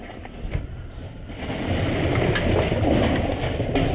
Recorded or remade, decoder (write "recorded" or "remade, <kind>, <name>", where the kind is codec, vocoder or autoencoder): recorded